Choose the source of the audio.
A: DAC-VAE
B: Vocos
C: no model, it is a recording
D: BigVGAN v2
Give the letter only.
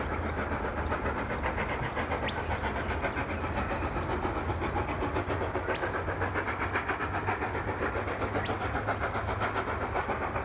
C